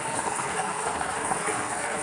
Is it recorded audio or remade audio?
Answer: remade